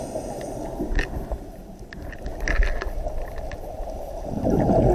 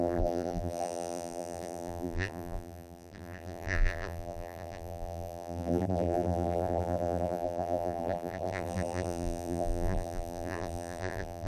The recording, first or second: first